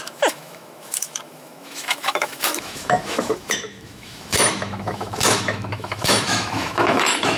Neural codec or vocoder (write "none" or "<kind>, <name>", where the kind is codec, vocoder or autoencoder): autoencoder, DAC-VAE